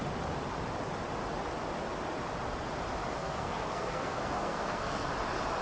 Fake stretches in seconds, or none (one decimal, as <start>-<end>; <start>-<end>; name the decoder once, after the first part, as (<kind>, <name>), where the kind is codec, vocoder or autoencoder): 3.2-5.1 (codec, SNAC)